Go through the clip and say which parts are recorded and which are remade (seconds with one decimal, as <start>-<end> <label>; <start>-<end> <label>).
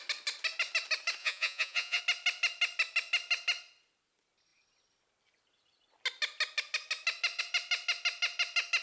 0.0-1.2 recorded; 1.2-2.0 remade; 2.0-8.8 recorded